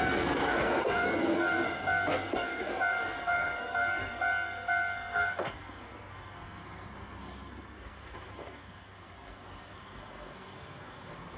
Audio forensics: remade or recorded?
remade